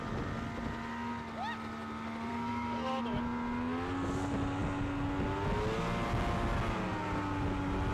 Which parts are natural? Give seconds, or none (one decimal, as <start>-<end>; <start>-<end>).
0.0-2.3; 3.0-7.9